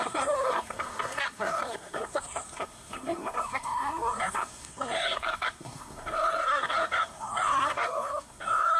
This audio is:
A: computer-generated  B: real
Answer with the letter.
A